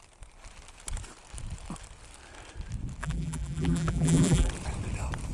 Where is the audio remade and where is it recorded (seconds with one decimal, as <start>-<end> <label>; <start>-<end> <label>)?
0.0-3.0 recorded; 3.0-4.5 remade; 4.5-5.3 recorded